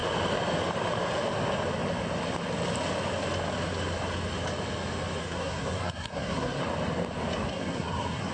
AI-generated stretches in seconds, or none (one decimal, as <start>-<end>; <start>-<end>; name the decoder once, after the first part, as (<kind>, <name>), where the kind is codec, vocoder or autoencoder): 5.2-6.6 (codec, SNAC); 7.5-8.3